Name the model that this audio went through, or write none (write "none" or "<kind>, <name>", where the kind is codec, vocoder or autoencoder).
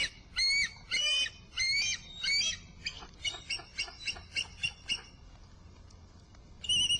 none